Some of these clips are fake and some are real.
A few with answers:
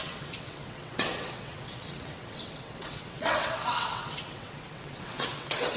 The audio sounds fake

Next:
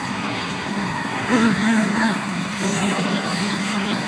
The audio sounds fake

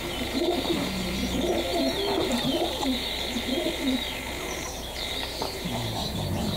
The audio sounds fake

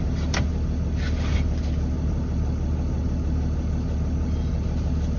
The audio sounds real